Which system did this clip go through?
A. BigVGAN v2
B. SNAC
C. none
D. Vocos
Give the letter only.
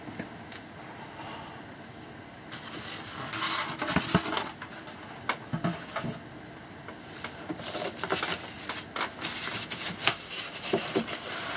C